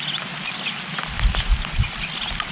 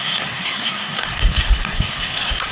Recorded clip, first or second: first